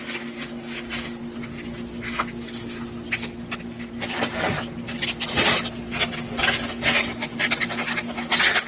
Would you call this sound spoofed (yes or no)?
no